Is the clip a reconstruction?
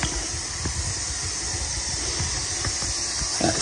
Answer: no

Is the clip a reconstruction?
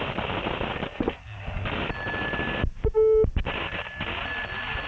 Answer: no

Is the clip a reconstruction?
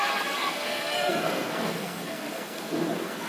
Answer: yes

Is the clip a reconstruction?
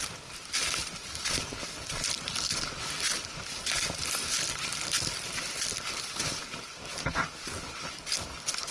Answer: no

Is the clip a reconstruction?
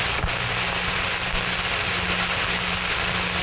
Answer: no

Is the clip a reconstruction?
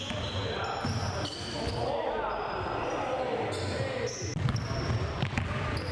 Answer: no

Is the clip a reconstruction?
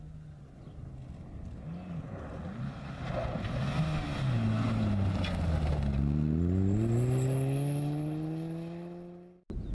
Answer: no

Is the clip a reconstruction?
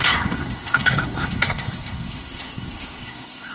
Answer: yes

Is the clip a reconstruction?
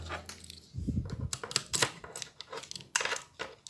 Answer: no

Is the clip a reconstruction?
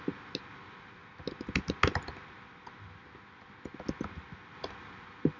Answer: no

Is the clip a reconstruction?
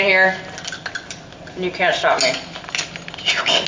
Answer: no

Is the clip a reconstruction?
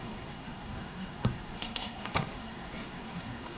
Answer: yes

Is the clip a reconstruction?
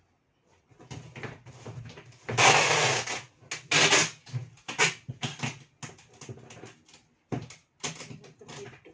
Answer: no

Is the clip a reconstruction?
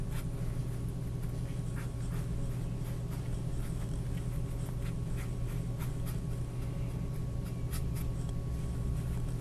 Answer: no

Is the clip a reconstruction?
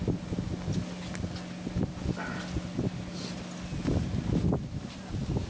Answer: no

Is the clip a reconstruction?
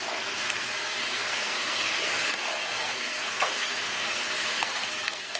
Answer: yes